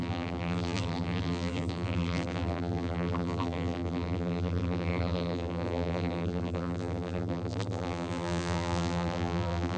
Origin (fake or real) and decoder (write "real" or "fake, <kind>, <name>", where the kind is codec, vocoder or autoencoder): fake, vocoder, BigVGAN v2